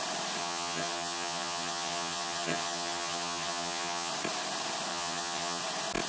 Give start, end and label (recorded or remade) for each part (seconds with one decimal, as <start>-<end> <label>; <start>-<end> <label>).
0.0-0.4 recorded; 0.4-4.1 remade; 4.1-4.9 recorded; 4.9-5.6 remade; 5.6-6.1 recorded